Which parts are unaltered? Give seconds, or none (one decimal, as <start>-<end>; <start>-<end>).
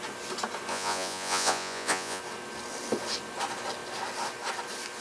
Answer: 0.0-0.7; 2.2-5.0